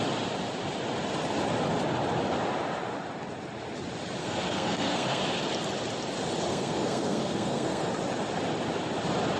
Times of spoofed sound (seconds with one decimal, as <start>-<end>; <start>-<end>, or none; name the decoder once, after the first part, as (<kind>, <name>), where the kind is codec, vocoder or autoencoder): 4.2-5.2 (codec, SNAC); 6.5-7.9